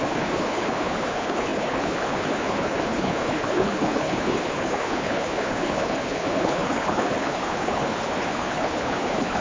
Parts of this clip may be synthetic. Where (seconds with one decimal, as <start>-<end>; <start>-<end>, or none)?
0.0-9.4